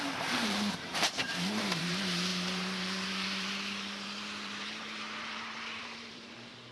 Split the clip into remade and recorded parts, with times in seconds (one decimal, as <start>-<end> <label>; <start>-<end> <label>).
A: 0.0-1.2 remade; 1.2-1.8 recorded; 1.8-6.7 remade